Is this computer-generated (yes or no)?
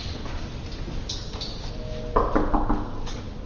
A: no